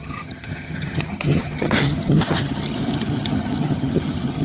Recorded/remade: remade